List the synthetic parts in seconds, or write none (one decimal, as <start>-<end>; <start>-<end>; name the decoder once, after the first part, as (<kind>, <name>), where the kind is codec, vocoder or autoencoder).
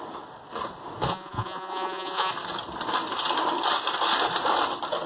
1.1-2.3 (vocoder, Vocos)